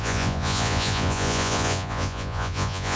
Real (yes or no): no